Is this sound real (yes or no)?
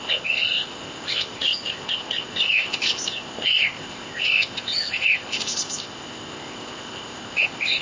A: no